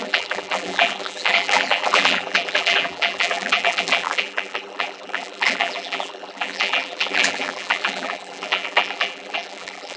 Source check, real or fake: fake